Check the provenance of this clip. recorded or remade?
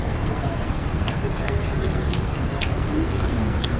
remade